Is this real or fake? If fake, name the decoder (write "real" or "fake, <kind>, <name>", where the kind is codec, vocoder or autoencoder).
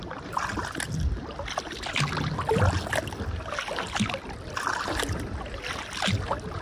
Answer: real